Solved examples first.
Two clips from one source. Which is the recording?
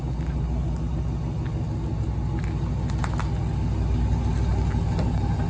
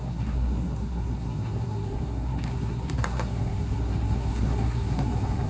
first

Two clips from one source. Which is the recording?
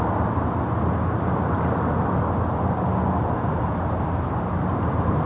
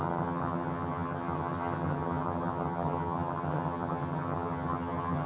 first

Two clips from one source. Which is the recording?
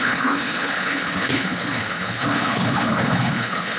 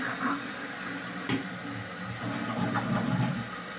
second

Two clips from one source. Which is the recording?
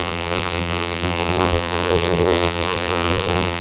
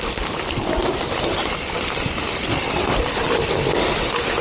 second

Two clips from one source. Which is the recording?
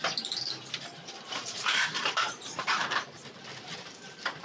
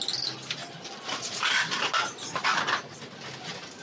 second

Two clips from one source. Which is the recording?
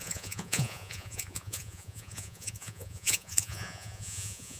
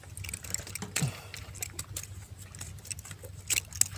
second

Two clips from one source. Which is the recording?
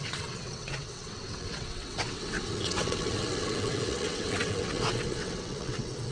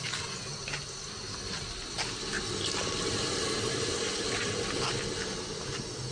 second